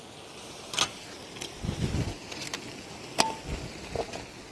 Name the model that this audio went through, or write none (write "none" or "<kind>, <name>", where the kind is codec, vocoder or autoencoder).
none